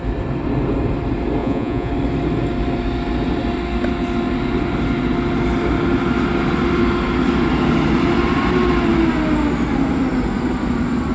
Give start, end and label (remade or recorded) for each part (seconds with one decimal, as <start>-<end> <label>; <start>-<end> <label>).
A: 0.0-1.4 recorded; 1.4-1.9 remade; 1.9-11.1 recorded